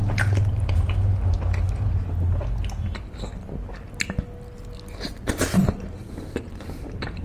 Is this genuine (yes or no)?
yes